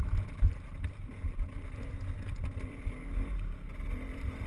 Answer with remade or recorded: recorded